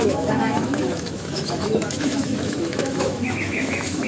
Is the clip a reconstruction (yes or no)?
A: yes